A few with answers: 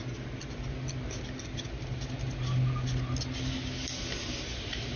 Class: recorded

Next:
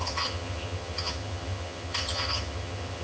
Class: remade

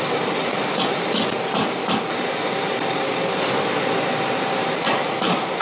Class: recorded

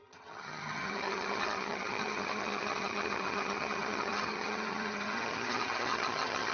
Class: remade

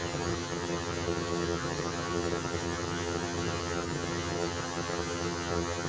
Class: remade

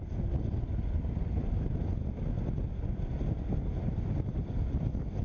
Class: recorded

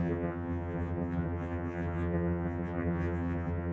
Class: remade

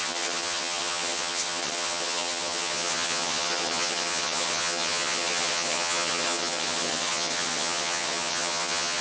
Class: remade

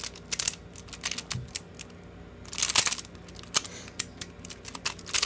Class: recorded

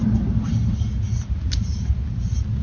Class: recorded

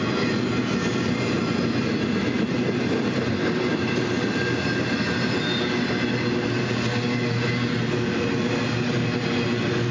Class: recorded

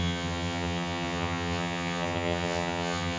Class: remade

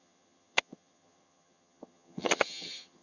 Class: remade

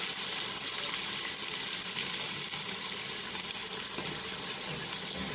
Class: recorded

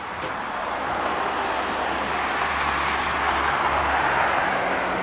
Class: recorded